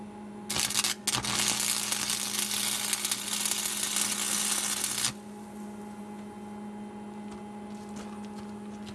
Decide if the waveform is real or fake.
real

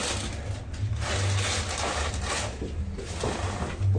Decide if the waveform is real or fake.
real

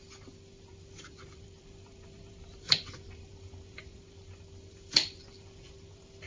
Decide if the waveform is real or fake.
fake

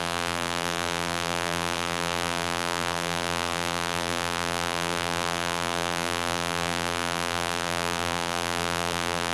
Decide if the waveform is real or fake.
fake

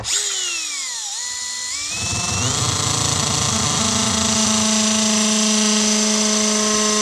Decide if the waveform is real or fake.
real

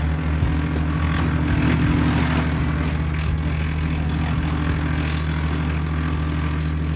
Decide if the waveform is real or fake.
real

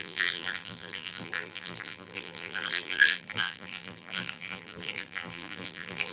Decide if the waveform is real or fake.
fake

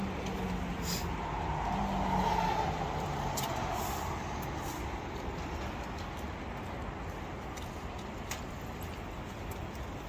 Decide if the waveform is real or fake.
real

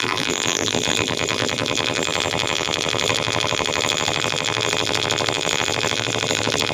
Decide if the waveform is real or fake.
fake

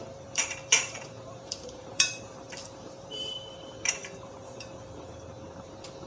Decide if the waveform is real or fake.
fake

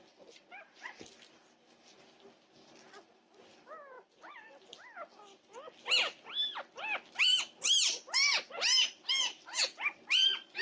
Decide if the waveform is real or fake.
real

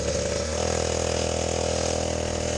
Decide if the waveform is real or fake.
real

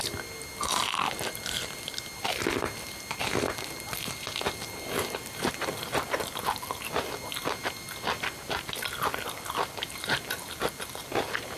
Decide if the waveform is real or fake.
real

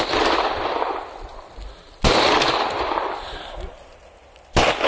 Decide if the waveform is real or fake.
real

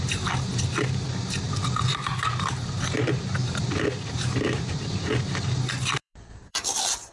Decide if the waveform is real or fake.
fake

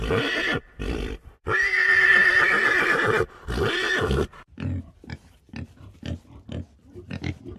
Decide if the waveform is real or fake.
fake